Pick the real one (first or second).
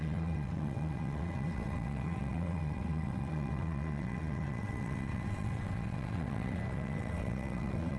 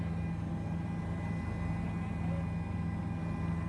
second